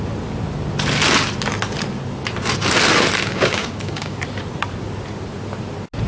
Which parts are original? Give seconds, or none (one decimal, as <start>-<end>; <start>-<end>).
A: 0.0-3.3; 4.2-6.1